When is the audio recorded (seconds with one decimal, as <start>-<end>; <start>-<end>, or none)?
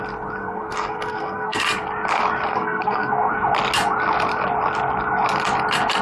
0.0-0.4; 1.6-2.5; 3.3-6.0